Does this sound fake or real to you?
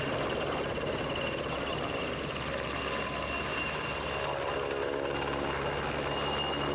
real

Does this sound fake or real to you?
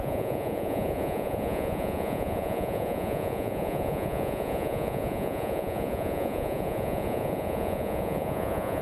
fake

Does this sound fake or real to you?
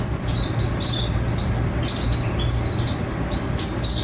real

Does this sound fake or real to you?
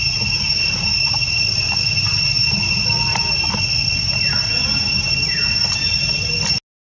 real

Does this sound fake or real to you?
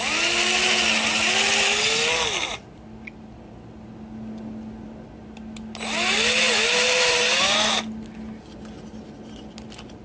real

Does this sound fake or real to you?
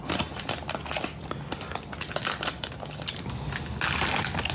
real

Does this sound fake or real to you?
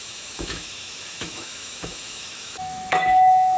fake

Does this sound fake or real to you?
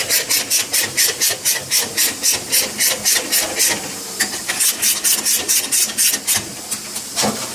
real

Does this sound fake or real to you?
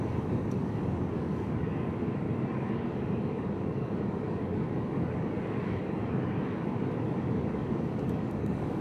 fake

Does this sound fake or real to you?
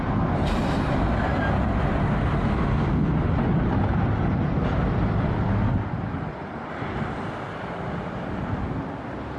real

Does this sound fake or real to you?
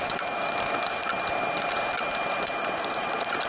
real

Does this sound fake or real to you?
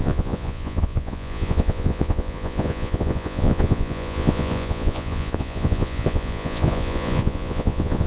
fake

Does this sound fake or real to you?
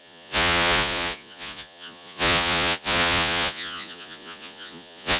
fake